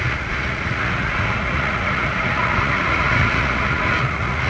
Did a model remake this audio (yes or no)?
yes